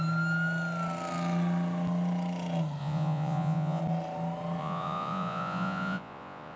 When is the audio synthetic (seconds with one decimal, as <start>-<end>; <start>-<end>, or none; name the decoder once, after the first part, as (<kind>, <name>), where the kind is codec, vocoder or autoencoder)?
2.8-3.8 (vocoder, Vocos); 4.6-6.6